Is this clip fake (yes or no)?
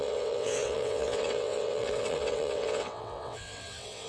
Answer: yes